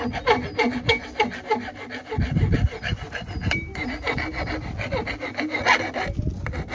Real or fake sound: real